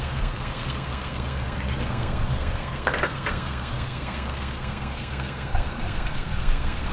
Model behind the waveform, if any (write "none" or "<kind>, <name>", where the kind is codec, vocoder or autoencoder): codec, SNAC